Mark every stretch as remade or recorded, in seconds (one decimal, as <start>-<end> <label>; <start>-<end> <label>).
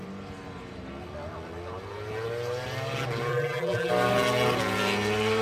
0.0-3.3 recorded; 3.3-3.9 remade; 3.9-5.4 recorded